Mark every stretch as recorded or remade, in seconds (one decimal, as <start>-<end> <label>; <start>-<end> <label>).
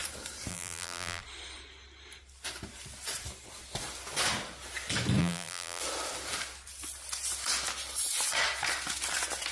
0.0-0.5 recorded; 0.5-1.2 remade; 1.2-5.2 recorded; 5.2-5.8 remade; 5.8-9.5 recorded